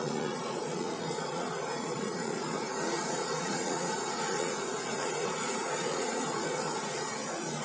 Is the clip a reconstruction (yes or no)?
yes